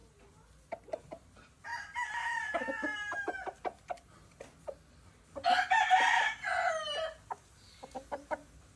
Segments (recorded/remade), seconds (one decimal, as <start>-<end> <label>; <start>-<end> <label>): 0.0-8.8 recorded